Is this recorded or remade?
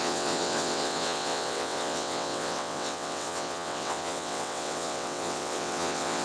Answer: remade